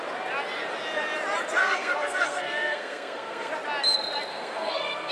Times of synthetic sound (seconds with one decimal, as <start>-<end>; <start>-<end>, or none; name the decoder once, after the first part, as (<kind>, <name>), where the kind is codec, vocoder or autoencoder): 1.6-3.5 (codec, SNAC); 4.3-5.1